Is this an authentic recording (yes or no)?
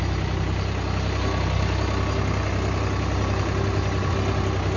yes